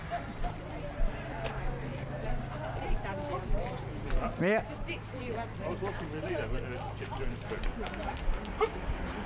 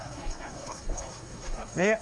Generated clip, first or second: second